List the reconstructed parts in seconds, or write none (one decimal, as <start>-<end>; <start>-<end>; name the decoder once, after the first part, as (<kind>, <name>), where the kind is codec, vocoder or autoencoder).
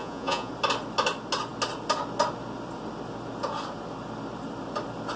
0.0-0.5 (vocoder, Vocos)